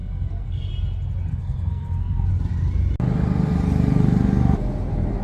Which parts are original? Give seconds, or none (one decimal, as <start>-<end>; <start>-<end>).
0.7-1.3; 2.3-5.2